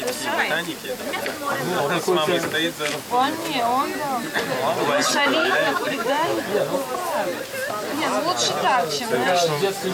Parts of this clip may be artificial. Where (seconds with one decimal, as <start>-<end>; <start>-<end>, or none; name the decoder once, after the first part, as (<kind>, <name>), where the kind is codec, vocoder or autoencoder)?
5.4-6.4 (autoencoder, DAC-VAE)